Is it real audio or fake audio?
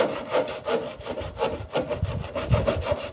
real